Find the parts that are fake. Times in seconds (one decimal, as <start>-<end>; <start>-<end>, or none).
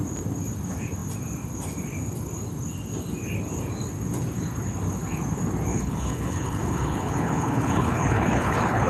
5.7-8.9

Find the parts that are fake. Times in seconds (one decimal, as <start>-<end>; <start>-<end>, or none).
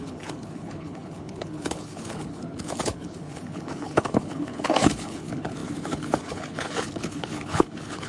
0.0-8.1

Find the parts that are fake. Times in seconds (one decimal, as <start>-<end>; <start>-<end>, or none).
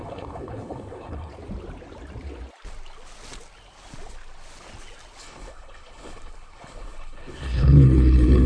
0.0-1.3; 5.2-8.5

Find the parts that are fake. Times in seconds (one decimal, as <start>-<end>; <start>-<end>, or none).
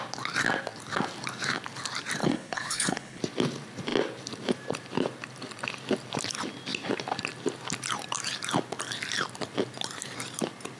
2.2-3.2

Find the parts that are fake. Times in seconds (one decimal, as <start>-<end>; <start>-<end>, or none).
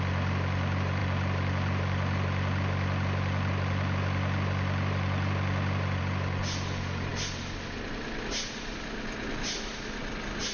none